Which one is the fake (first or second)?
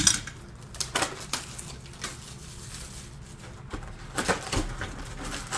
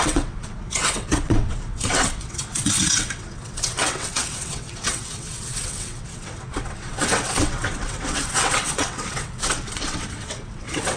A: second